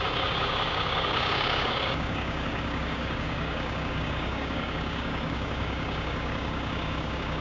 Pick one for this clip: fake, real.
fake